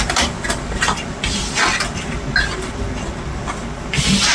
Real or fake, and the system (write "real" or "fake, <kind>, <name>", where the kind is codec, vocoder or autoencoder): real